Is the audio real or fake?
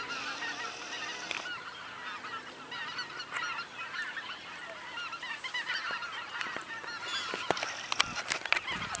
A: real